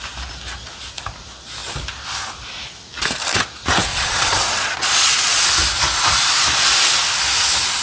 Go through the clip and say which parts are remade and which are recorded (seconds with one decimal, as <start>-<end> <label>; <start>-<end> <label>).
0.0-3.9 recorded; 3.9-5.4 remade; 5.4-7.8 recorded